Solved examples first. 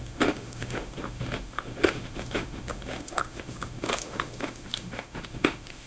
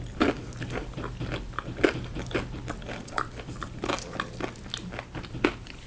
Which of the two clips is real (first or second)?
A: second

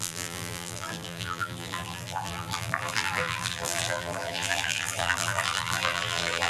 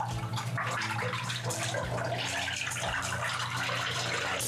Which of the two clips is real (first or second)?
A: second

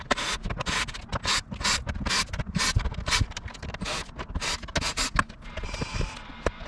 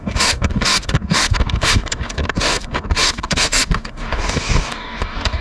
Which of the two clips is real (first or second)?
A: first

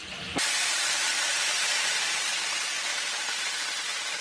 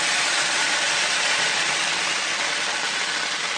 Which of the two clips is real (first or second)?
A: second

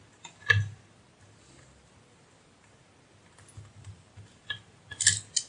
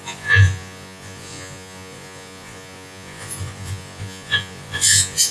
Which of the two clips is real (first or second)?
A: first